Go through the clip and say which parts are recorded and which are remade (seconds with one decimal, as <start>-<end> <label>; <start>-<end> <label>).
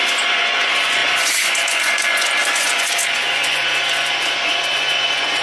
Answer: 0.0-5.4 remade